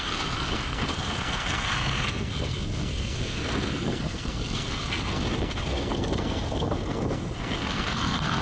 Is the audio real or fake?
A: fake